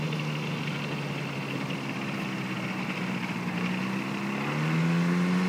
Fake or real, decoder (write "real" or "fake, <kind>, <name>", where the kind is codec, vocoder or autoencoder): real